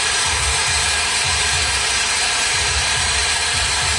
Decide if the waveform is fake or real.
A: fake